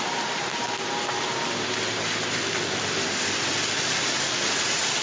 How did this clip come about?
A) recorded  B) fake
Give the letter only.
A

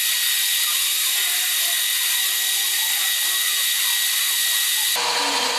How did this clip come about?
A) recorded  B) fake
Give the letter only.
A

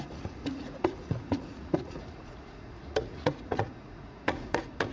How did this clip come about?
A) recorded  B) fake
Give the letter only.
B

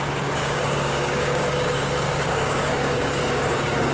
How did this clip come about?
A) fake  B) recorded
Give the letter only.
A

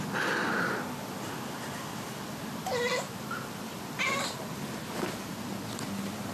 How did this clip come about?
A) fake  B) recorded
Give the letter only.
B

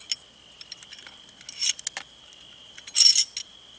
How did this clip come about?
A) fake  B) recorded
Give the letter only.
B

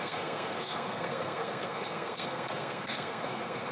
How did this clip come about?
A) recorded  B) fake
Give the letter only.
B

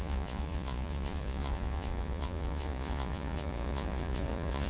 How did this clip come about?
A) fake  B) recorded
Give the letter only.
A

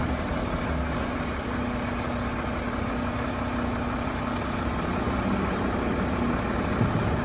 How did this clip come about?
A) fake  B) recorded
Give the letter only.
B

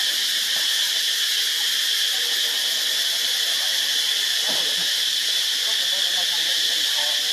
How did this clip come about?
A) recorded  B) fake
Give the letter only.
A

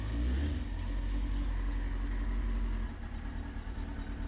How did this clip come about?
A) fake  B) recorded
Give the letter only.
B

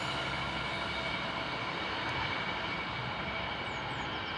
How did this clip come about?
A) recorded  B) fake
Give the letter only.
A